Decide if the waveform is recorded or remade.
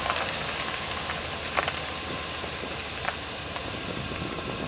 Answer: recorded